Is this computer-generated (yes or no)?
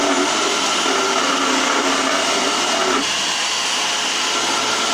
no